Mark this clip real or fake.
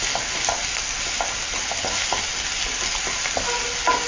real